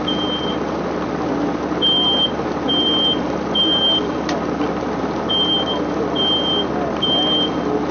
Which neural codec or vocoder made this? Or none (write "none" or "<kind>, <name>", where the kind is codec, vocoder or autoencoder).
none